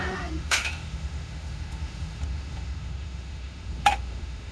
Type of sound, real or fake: fake